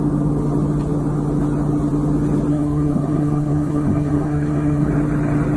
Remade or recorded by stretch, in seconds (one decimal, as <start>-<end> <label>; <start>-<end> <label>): 0.0-2.5 recorded; 2.5-4.9 remade; 4.9-5.6 recorded